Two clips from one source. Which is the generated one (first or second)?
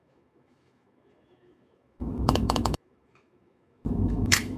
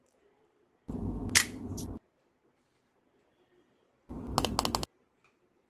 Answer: first